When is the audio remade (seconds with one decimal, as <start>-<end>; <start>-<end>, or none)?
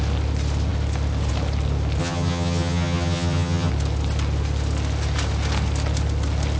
2.0-3.7